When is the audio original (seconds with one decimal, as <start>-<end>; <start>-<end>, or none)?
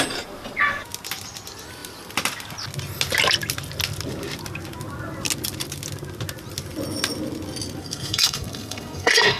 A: 0.0-7.8